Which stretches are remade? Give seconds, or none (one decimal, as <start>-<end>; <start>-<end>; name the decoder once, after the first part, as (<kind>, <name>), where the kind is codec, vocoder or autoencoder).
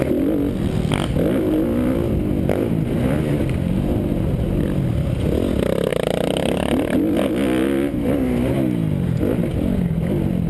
none